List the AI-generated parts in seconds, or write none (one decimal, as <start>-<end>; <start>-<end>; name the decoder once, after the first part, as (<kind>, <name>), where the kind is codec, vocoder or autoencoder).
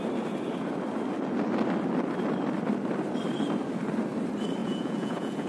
4.6-5.5 (vocoder, Vocos)